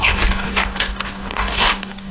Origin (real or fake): fake